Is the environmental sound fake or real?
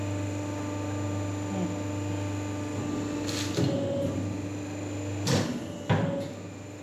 real